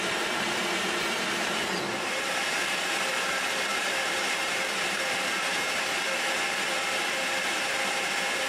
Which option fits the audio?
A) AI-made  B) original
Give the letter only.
A